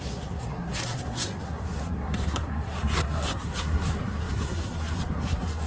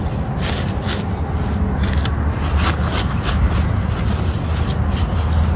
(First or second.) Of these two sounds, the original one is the second